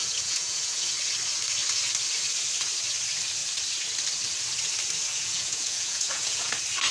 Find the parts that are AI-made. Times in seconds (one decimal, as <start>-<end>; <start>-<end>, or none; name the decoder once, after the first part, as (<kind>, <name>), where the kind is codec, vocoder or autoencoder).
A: 0.0-0.9 (vocoder, Vocos); 5.1-6.5